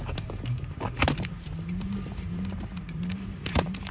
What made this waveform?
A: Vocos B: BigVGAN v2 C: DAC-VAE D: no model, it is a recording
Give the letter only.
B